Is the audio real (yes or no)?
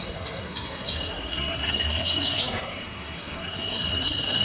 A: no